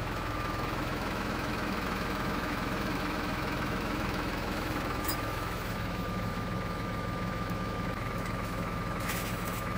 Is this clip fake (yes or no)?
yes